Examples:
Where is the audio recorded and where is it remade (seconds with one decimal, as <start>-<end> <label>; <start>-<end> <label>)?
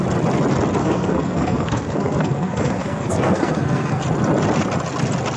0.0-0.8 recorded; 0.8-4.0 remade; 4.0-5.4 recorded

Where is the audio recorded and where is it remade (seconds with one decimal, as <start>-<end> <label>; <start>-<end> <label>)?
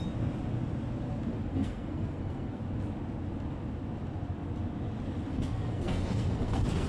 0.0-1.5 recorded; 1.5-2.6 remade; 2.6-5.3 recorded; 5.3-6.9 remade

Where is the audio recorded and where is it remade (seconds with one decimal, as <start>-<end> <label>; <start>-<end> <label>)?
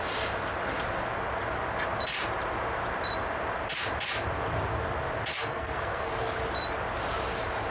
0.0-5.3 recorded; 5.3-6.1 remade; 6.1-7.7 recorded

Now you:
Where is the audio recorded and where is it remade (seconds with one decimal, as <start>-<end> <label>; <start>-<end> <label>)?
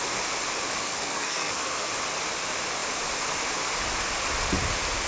0.0-0.8 recorded; 0.8-1.9 remade; 1.9-5.1 recorded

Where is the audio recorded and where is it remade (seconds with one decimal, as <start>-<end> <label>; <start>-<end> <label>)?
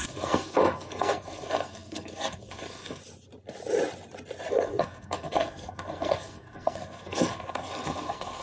0.0-3.0 remade; 3.0-4.5 recorded; 4.5-8.4 remade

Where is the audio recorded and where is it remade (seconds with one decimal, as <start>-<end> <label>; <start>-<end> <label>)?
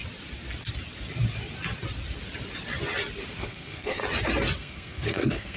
0.0-3.4 recorded; 3.4-4.0 remade; 4.0-4.6 recorded; 4.6-5.6 remade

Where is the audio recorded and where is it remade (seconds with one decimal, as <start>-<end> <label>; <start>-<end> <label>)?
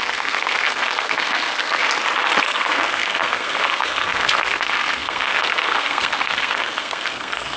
0.0-1.8 remade; 1.8-2.4 recorded; 2.4-7.6 remade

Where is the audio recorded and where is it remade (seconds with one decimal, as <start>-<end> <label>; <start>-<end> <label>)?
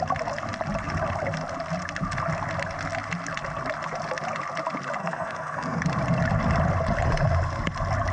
0.0-5.0 recorded; 5.0-5.8 remade; 5.8-8.1 recorded